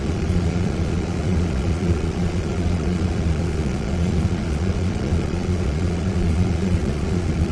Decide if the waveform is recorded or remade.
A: remade